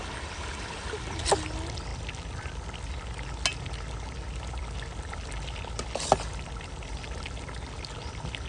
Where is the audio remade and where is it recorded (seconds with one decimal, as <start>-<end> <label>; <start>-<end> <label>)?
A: 0.0-8.5 recorded